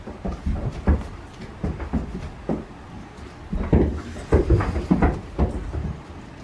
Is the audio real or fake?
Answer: real